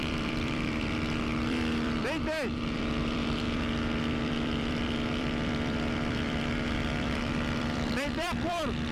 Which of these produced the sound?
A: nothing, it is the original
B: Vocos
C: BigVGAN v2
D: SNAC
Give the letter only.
C